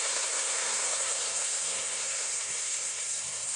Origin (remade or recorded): remade